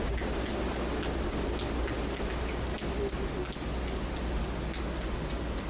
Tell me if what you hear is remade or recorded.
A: recorded